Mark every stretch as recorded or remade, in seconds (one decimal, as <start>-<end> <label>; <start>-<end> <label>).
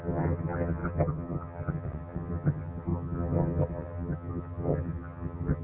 0.0-5.6 remade